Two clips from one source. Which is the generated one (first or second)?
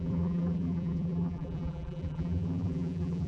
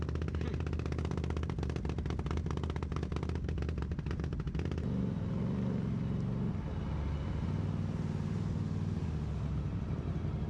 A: first